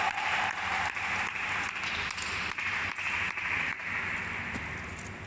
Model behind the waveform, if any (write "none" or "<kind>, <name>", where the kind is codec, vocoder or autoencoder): none